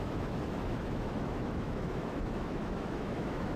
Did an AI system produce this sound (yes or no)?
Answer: yes